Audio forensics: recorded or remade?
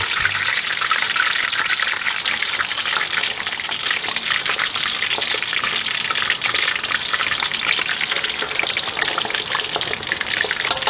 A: recorded